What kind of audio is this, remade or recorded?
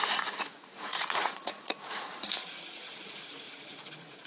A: remade